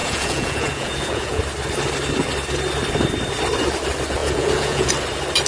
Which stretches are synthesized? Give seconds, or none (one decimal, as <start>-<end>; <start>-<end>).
0.0-1.4; 4.2-4.9